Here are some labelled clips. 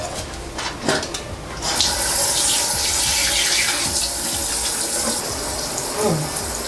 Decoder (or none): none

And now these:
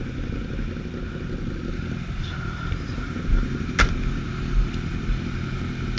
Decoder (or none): none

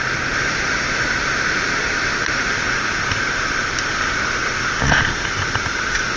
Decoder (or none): none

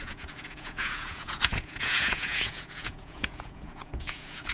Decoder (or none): vocoder, Vocos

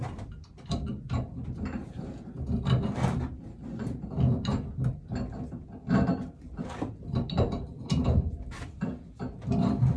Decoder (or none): none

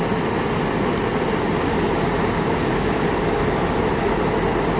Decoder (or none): none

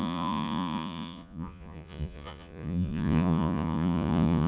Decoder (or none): vocoder, Vocos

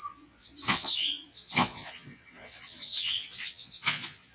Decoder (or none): vocoder, Vocos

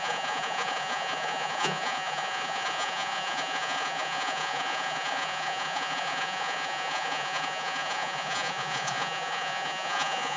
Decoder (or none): vocoder, Vocos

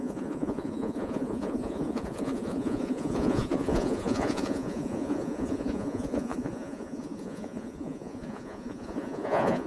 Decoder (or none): vocoder, Vocos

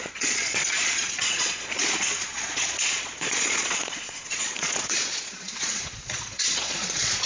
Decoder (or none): vocoder, Vocos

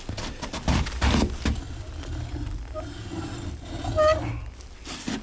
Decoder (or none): none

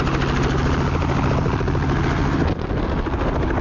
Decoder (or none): none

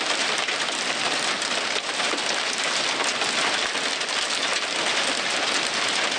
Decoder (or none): none